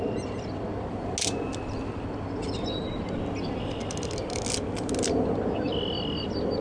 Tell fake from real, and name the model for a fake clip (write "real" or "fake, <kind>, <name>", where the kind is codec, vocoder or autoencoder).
real